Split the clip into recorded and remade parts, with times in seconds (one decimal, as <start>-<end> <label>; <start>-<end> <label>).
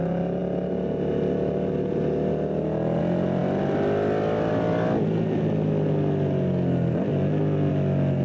0.0-8.2 recorded